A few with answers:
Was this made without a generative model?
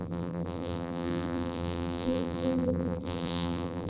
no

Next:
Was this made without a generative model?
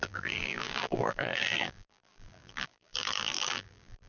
no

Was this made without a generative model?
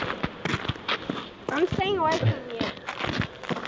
yes